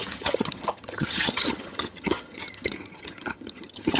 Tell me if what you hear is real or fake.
fake